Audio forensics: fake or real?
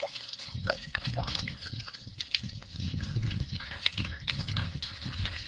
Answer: fake